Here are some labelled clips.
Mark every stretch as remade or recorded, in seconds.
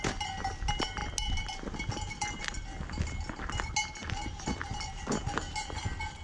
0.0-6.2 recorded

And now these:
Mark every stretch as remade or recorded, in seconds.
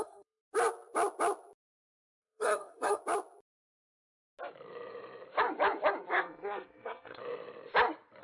0.0-0.4 remade; 0.4-2.2 recorded; 2.2-3.0 remade; 3.0-6.1 recorded; 6.1-7.2 remade; 7.2-8.2 recorded